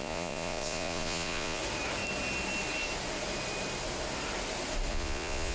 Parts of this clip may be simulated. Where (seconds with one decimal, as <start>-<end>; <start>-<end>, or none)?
0.0-1.6; 4.9-5.5